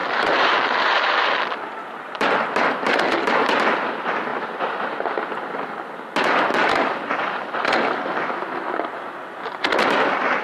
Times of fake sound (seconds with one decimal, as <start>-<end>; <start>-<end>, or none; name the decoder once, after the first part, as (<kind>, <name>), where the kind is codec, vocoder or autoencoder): 0.0-1.4 (vocoder, BigVGAN v2)